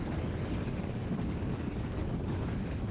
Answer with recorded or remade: remade